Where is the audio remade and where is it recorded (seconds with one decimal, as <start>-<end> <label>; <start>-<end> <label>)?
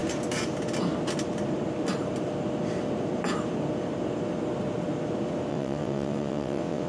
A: 0.0-5.5 recorded; 5.5-6.9 remade